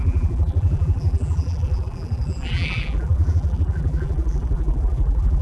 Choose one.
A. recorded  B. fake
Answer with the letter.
B